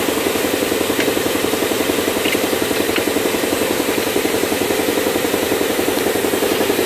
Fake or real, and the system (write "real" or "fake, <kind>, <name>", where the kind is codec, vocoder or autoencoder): real